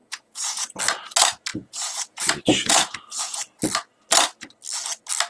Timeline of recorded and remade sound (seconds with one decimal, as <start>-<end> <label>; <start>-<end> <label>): 0.0-0.8 remade; 0.8-1.5 recorded; 1.5-3.6 remade; 3.6-5.3 recorded